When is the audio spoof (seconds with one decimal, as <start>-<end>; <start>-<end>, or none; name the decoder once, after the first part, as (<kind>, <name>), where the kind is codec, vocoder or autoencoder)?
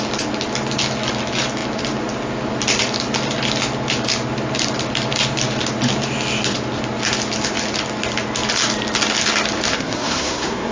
9.7-10.7 (codec, SNAC)